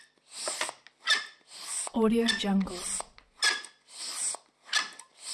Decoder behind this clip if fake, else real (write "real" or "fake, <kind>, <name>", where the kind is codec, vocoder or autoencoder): real